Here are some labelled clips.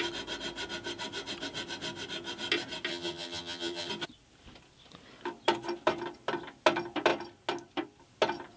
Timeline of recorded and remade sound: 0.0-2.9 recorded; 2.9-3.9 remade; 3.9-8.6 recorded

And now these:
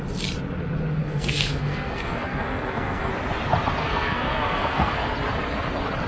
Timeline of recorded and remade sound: 0.0-1.0 recorded; 1.0-3.1 remade; 3.1-3.8 recorded; 3.8-4.9 remade; 4.9-6.1 recorded

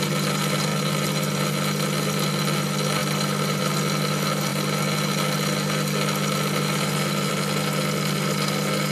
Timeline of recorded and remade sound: 0.0-8.9 recorded

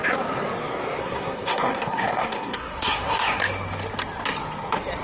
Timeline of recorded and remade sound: 0.0-1.0 recorded; 1.0-3.4 remade; 3.4-5.0 recorded